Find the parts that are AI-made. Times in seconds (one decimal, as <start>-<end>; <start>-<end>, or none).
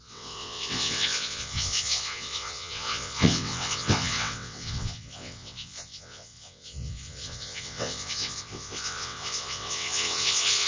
0.0-10.7